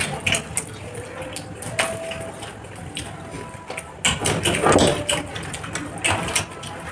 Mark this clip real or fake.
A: real